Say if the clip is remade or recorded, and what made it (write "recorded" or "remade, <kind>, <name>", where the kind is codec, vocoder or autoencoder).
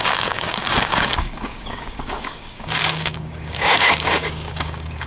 remade, codec, DAC